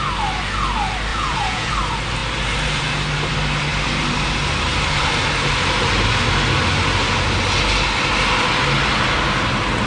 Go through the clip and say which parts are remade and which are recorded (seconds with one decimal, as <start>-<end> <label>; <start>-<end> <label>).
0.0-1.1 recorded; 1.1-1.7 remade; 1.7-9.9 recorded